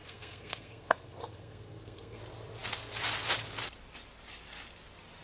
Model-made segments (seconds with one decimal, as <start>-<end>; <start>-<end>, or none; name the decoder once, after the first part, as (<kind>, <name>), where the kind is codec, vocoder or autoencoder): 0.0-2.2 (codec, SNAC)